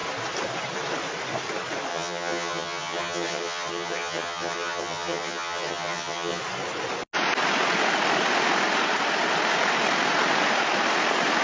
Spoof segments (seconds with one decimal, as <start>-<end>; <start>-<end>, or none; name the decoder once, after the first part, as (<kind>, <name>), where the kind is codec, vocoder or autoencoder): 1.9-6.4 (vocoder, HiFi-GAN)